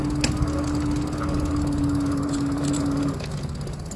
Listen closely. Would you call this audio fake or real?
real